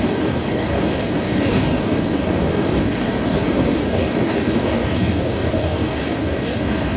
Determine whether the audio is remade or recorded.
remade